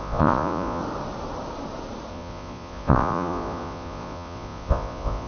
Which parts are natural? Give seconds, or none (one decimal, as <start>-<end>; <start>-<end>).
0.8-2.1